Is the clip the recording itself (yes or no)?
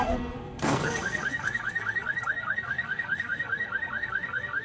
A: no